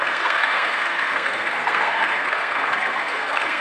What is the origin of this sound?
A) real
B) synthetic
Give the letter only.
B